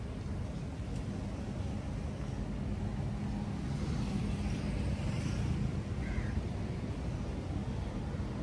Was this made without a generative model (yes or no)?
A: yes